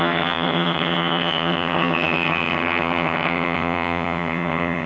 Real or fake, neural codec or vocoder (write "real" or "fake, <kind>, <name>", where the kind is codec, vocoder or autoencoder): fake, vocoder, HiFi-GAN